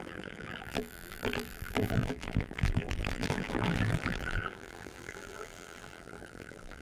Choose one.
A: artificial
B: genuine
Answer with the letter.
A